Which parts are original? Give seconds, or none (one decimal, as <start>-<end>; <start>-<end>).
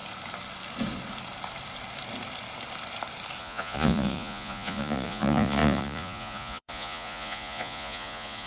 0.0-3.4